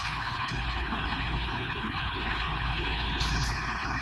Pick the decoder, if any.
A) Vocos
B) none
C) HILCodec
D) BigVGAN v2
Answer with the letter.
C